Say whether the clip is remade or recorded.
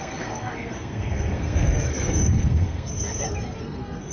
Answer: remade